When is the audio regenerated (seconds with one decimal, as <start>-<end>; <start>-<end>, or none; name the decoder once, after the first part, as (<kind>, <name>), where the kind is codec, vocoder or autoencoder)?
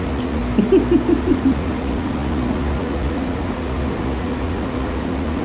0.0-0.4 (vocoder, Vocos); 1.2-5.4